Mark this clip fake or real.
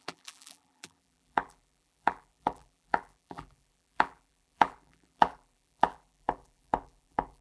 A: fake